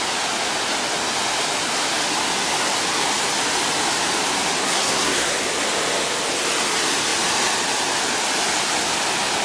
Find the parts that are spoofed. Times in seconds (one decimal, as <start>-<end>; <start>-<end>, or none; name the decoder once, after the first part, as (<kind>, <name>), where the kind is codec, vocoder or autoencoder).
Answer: 4.6-5.3 (codec, SNAC)